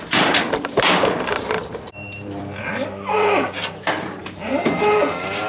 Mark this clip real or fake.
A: fake